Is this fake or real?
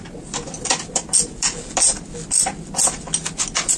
real